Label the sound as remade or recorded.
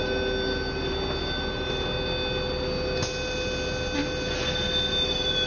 recorded